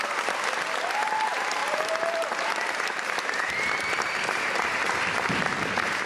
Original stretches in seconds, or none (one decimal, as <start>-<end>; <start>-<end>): 0.0-1.6; 5.3-6.1